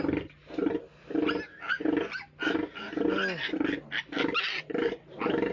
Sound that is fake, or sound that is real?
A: real